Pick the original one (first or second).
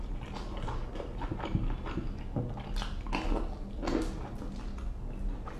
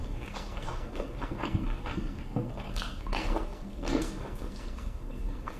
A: first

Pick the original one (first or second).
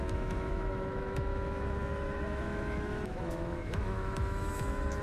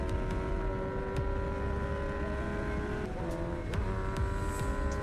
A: second